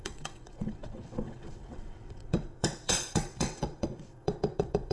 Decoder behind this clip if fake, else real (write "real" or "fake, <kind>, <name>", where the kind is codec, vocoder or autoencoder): fake, vocoder, WaveNeXt